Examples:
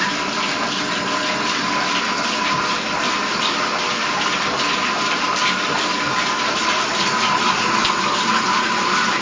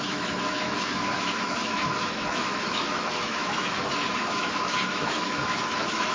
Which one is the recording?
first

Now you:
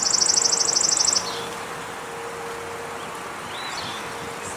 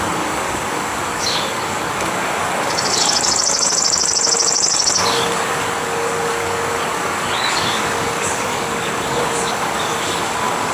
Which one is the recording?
first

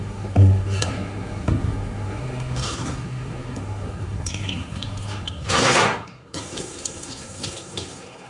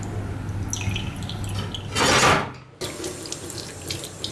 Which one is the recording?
second